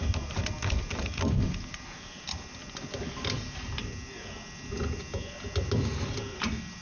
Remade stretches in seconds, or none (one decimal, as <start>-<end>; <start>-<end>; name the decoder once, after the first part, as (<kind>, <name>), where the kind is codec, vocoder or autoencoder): none